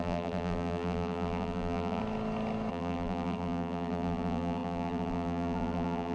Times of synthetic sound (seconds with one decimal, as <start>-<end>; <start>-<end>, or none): 0.0-2.0; 2.7-6.1

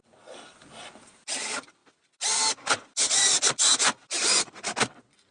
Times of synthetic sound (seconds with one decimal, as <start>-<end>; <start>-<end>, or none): none

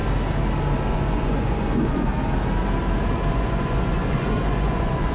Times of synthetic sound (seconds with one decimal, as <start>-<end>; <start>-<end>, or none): 0.9-2.1; 3.3-5.1

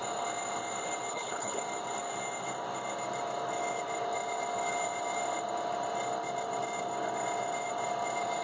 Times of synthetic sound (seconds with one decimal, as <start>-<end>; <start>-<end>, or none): 1.1-1.6

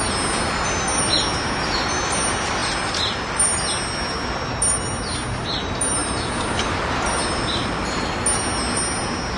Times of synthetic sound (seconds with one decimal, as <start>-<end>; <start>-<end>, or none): none